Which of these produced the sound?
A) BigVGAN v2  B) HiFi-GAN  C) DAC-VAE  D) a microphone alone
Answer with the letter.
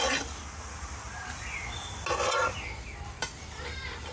D